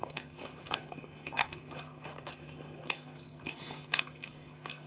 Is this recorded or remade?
remade